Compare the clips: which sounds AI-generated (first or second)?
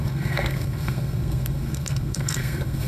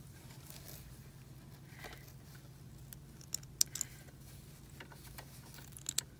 first